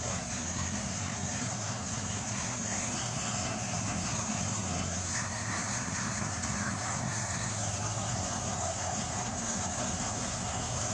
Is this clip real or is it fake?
fake